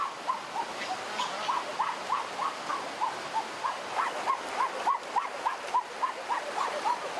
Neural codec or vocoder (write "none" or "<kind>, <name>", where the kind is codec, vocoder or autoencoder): none